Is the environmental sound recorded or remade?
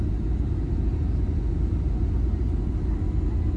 recorded